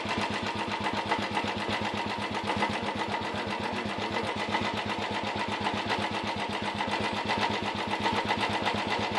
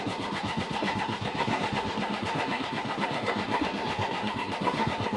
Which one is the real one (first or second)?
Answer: first